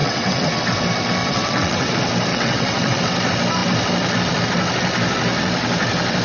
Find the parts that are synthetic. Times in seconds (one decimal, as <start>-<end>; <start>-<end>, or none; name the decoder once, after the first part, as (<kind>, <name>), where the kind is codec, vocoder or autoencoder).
0.0-0.6 (vocoder, WaveNeXt); 1.2-1.9; 2.3-3.0